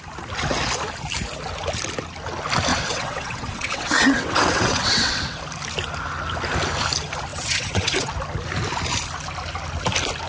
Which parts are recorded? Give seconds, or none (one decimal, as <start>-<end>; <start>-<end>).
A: 0.0-2.7; 5.4-7.3; 8.1-10.3